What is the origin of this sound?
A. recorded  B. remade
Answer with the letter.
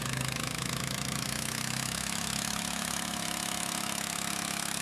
B